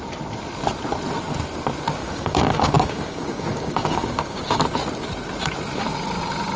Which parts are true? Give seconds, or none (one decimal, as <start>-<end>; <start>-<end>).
0.0-2.0; 4.6-6.6